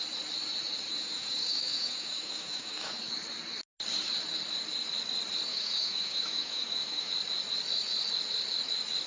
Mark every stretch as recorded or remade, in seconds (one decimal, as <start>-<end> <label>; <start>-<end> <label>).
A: 0.0-0.9 recorded; 0.9-3.0 remade; 3.0-5.5 recorded; 5.5-7.1 remade; 7.1-9.1 recorded